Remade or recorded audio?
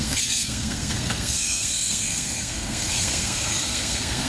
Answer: remade